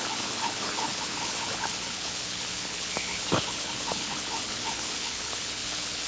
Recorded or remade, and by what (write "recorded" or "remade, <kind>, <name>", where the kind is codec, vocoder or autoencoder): remade, codec, HILCodec